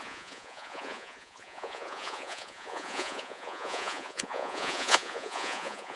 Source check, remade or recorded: remade